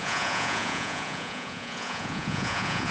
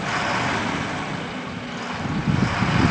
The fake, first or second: first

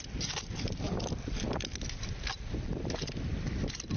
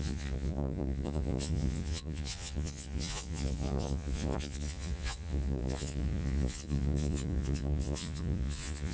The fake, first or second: second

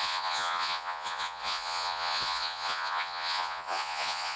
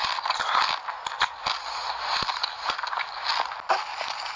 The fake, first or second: first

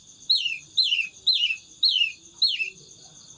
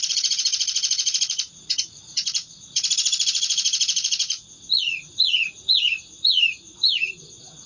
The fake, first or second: second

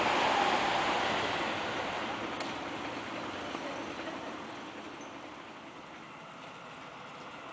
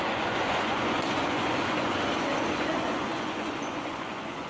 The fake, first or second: second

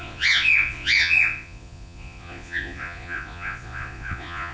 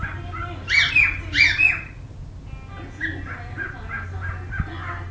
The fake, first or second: first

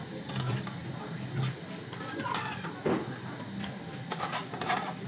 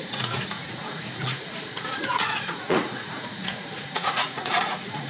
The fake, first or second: second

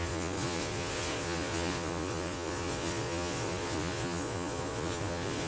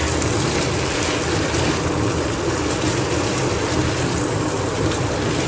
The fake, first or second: first